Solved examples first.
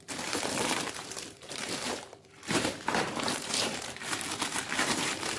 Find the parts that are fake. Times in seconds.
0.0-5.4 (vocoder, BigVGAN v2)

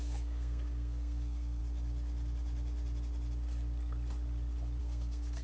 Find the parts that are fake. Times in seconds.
0.0-1.6 (codec, SNAC); 4.8-5.4

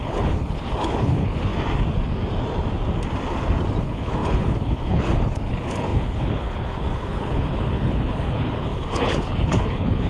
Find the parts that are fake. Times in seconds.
0.0-1.5 (codec, HILCodec); 3.8-10.1

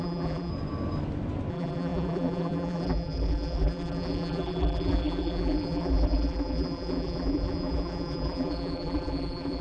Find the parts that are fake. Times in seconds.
0.0-0.5 (vocoder, BigVGAN v2); 1.5-9.6

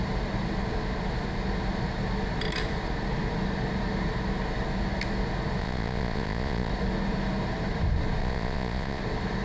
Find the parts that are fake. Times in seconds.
5.6-6.7 (vocoder, Vocos); 8.2-9.0

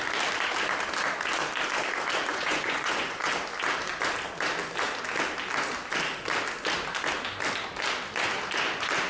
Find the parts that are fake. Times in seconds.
2.3-3.3 (vocoder, Vocos)

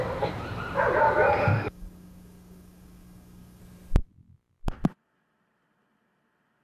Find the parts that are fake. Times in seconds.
1.5-3.6 (codec, DAC)

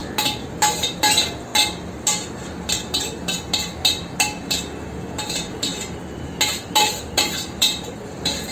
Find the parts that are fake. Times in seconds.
0.8-1.5 (vocoder, BigVGAN v2); 4.9-5.7; 7.0-8.5